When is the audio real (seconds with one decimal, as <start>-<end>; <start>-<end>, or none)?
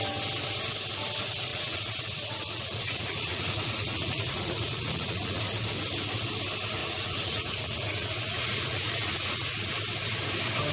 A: 0.0-1.5; 5.4-6.8; 9.7-10.7